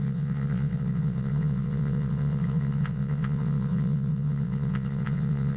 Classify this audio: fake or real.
fake